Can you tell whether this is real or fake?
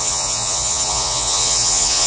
fake